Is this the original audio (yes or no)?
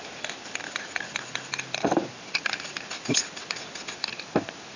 yes